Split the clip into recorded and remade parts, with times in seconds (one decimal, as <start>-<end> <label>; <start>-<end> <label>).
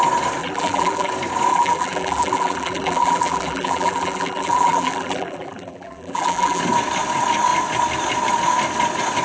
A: 0.0-0.4 recorded; 0.4-1.1 remade; 1.1-1.5 recorded; 1.5-6.6 remade; 6.6-9.2 recorded